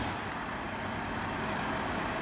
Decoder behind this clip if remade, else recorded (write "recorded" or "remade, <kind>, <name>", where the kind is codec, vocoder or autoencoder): recorded